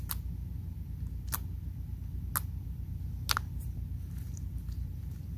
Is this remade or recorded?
recorded